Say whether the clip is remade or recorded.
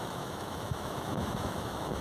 remade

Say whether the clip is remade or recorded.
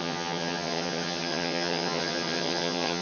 remade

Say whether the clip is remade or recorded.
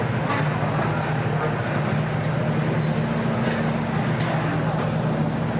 recorded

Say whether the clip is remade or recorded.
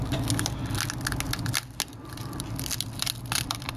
recorded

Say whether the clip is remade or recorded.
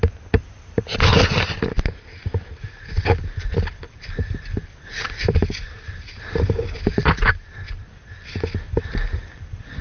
recorded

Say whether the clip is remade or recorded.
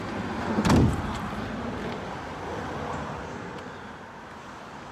recorded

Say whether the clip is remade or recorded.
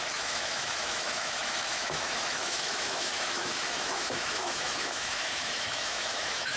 remade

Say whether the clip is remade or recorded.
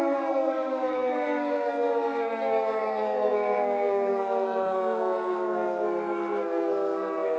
remade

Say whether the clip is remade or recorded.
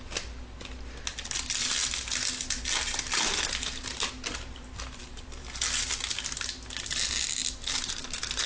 recorded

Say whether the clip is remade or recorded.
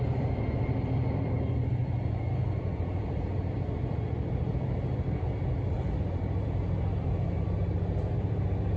remade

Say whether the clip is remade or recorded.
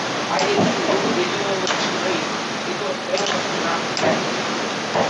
recorded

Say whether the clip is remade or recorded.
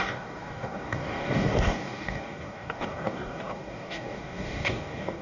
remade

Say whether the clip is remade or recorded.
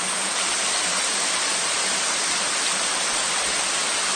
recorded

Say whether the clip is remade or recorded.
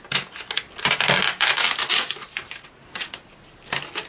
recorded